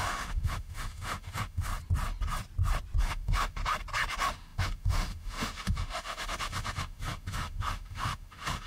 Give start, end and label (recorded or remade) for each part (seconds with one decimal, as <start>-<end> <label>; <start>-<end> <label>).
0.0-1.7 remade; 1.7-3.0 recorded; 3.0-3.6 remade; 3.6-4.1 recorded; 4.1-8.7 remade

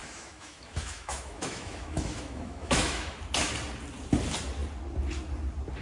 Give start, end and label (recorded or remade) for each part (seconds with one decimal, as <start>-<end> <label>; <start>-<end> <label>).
0.0-3.2 remade; 3.2-5.8 recorded

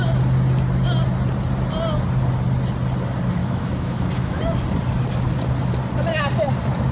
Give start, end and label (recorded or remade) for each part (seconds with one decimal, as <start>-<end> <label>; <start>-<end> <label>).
0.0-3.4 recorded; 3.4-4.4 remade; 4.4-6.9 recorded

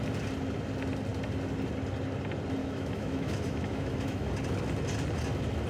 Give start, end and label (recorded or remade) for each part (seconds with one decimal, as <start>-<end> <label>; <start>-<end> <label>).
0.0-2.6 recorded; 2.6-4.3 remade; 4.3-5.7 recorded

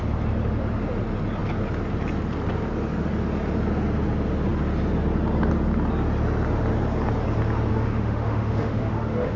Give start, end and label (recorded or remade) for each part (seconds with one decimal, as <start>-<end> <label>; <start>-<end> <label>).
0.0-7.7 recorded; 7.7-9.4 remade

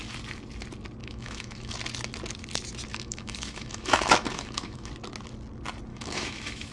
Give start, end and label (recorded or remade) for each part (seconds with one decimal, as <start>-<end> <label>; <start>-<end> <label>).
0.0-1.0 recorded; 1.0-1.7 remade; 1.7-2.9 recorded; 2.9-4.9 remade; 4.9-5.9 recorded; 5.9-6.7 remade

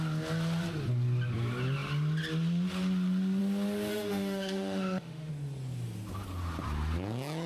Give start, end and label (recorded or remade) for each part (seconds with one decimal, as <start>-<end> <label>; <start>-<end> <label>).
0.0-3.9 recorded; 3.9-5.3 remade; 5.3-7.5 recorded